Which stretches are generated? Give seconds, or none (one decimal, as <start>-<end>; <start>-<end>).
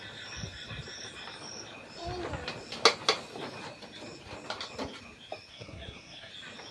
5.5-6.3